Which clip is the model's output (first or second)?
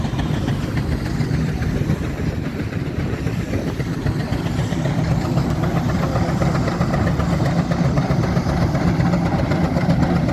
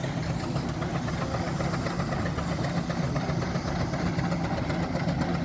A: first